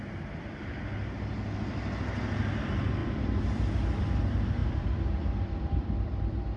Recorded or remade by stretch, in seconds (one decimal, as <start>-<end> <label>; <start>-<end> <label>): 0.0-3.0 recorded; 3.0-4.0 remade; 4.0-4.6 recorded; 4.6-6.6 remade